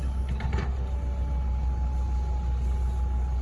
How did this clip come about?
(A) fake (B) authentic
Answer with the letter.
B